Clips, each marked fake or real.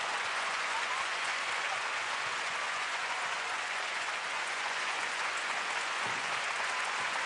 fake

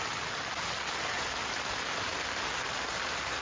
real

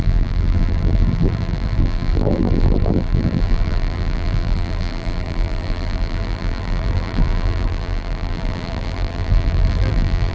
fake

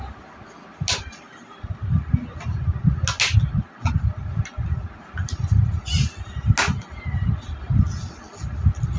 real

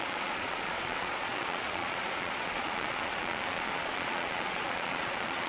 fake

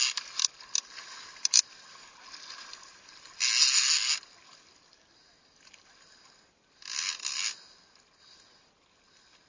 real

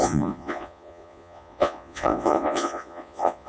fake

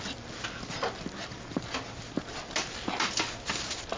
real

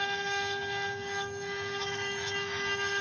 fake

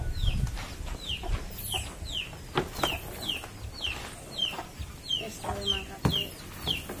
real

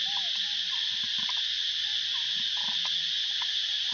real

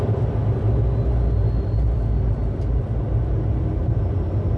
real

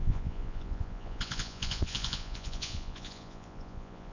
fake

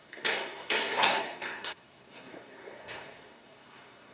fake